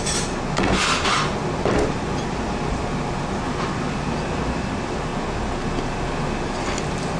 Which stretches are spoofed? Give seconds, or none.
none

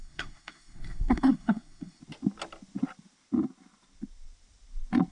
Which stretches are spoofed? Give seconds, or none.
0.0-2.0 (codec, SNAC)

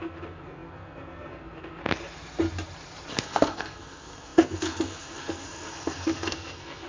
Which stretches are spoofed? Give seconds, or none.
0.0-1.8 (codec, SNAC); 3.1-6.9

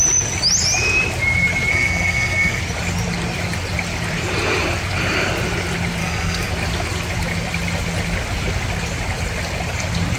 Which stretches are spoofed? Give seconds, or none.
1.7-2.6 (codec, SNAC); 6.0-6.5

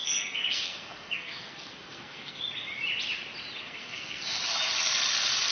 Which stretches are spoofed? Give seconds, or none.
0.0-2.4 (codec, SNAC); 3.6-4.4

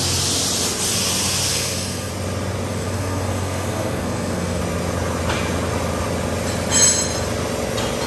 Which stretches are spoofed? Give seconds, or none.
1.5-2.1 (codec, SNAC); 2.7-4.6

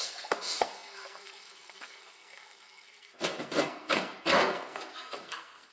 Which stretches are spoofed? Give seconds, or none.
0.0-5.7 (codec, SNAC)

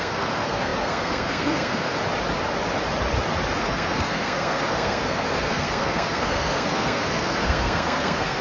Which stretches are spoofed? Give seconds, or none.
0.0-1.9 (codec, SNAC); 3.6-8.4